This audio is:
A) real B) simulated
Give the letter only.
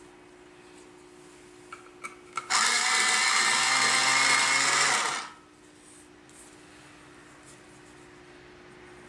A